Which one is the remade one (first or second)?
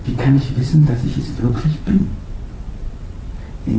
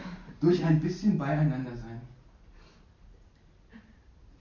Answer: first